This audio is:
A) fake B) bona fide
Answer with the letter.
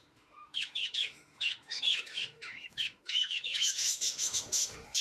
A